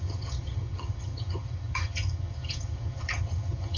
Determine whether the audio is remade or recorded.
remade